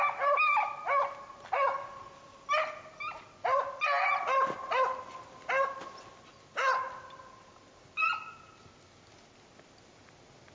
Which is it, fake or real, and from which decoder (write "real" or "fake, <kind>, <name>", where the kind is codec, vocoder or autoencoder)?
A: real